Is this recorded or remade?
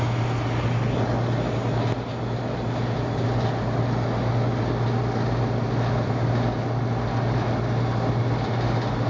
recorded